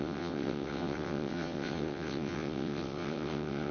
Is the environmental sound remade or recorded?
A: remade